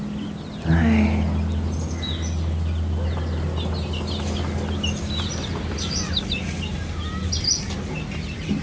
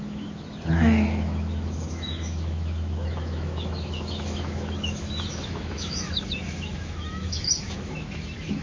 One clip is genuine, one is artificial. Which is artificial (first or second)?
second